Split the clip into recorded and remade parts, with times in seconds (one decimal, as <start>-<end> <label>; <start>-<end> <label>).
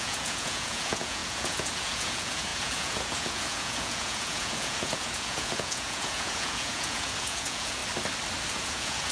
0.0-7.8 remade; 7.8-8.5 recorded; 8.5-9.1 remade